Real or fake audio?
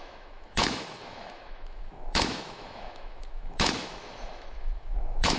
fake